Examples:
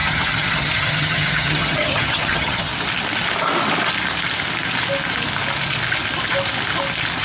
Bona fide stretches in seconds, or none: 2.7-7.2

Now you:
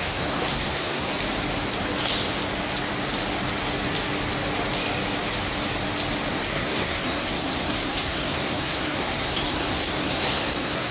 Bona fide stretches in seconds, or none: 1.1-6.3

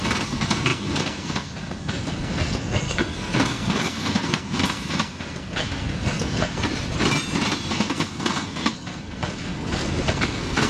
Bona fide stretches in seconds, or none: 6.7-7.7

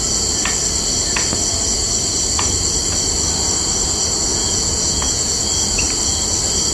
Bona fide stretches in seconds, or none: 0.0-4.3; 5.4-6.7